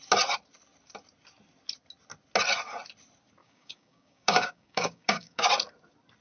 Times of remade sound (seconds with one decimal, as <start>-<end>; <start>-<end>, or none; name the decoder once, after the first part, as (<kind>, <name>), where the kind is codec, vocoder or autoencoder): 3.4-5.5 (codec, DAC)